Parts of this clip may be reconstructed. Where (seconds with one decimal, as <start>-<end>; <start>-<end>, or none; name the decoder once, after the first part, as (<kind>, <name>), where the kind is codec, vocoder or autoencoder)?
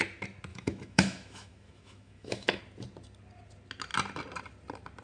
0.5-2.6 (autoencoder, DAC-VAE)